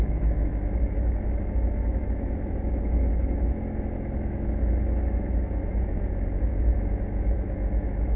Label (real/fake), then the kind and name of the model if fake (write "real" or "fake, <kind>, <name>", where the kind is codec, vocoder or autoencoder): fake, autoencoder, DAC-VAE